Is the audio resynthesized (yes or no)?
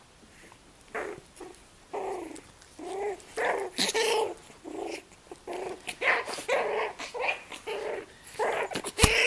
no